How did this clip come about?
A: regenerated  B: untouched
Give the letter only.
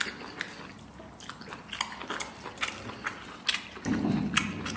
B